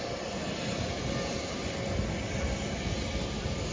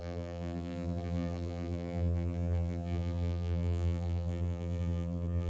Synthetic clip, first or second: second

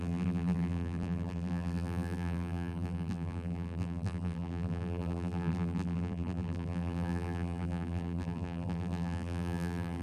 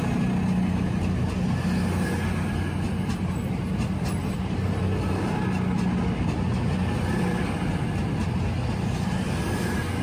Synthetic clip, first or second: first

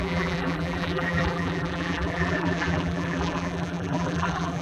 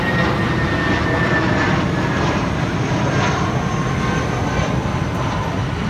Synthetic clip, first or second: first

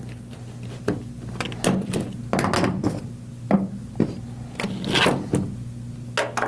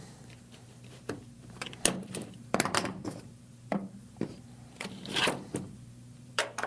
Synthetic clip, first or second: second